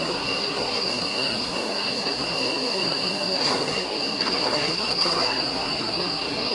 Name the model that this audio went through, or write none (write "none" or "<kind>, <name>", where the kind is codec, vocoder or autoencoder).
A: codec, SNAC